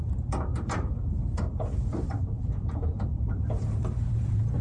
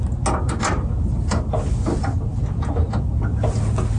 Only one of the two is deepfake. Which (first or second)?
first